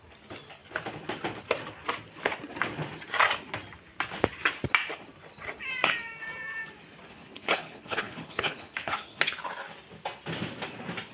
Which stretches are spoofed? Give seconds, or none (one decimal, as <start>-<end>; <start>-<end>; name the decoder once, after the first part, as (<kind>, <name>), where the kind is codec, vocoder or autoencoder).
7.1-9.2 (codec, HILCodec)